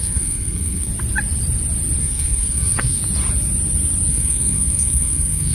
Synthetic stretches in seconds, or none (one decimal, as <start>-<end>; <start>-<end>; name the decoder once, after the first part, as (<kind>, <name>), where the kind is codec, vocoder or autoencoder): 0.0-0.9 (codec, SNAC); 2.0-3.0; 4.1-5.5

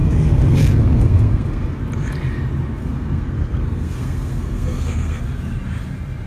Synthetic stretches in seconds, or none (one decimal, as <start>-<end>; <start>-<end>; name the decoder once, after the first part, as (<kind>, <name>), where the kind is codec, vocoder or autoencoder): 0.0-1.8 (codec, SNAC); 2.8-5.2

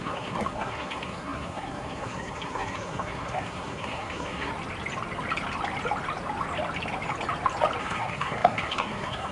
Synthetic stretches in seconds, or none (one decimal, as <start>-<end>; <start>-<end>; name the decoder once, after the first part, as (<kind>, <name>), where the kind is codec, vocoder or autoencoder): 0.0-4.5 (codec, SNAC); 7.8-9.3

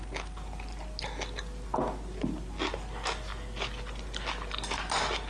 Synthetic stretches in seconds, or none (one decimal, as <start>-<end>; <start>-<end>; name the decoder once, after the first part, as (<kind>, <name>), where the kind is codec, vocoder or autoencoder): none

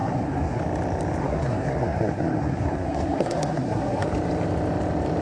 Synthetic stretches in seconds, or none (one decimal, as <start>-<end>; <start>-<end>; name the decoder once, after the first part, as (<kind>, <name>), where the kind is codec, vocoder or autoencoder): 0.0-0.6 (codec, SNAC); 1.2-4.1

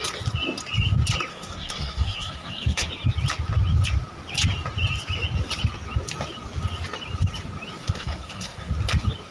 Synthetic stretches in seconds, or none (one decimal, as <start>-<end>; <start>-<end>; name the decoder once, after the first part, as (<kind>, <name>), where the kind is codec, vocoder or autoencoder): 1.3-2.9 (codec, SNAC); 7.8-8.7

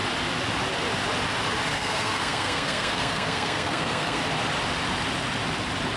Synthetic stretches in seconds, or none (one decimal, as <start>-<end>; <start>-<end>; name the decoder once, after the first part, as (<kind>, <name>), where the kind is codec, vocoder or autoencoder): 1.7-4.2 (codec, SNAC)